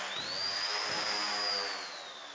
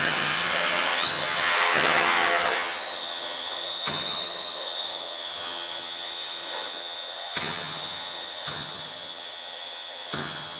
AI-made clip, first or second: second